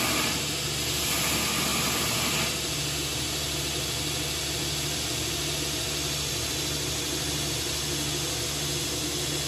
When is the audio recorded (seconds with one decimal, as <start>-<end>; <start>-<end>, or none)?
0.0-9.5